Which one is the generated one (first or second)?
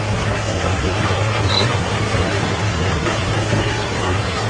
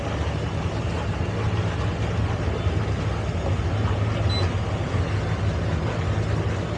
first